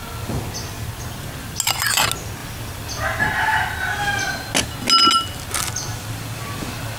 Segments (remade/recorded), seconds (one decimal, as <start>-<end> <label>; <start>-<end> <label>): 0.0-7.0 recorded